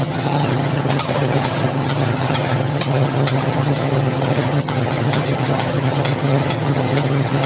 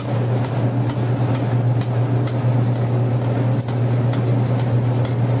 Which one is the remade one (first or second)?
first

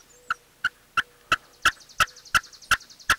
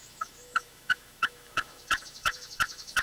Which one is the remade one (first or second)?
second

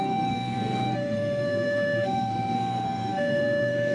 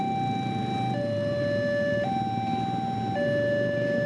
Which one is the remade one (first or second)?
first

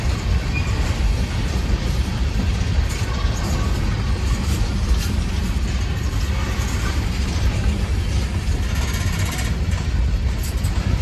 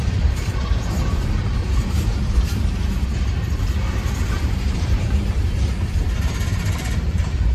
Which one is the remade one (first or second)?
second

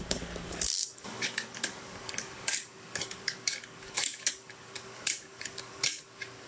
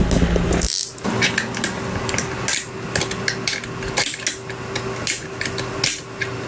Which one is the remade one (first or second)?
first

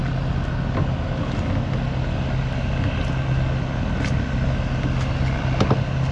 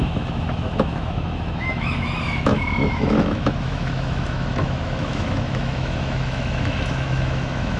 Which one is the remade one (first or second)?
second